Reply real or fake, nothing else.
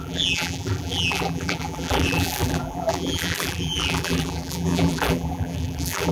fake